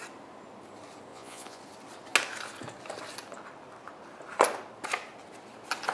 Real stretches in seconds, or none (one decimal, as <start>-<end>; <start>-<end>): 0.0-1.1; 1.6-5.9